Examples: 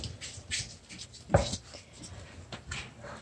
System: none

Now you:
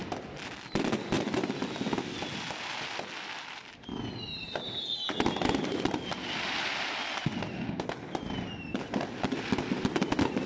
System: none